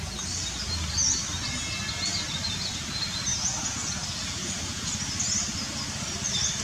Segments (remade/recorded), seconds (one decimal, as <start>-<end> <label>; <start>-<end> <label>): 0.0-3.3 recorded; 3.3-4.9 remade; 4.9-6.6 recorded